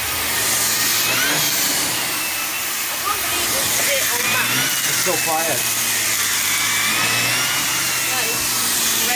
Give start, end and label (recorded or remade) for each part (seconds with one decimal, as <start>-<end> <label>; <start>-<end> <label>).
0.0-9.2 recorded